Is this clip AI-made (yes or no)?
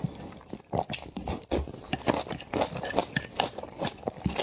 no